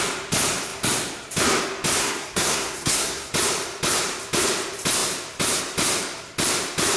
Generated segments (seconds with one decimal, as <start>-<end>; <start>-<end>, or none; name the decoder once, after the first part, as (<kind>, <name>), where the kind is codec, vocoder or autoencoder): 2.0-3.3 (codec, SNAC)